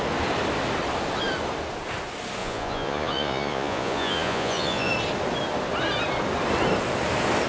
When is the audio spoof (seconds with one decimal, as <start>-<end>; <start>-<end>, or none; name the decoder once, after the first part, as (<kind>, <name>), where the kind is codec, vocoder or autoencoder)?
2.4-4.9 (vocoder, Vocos)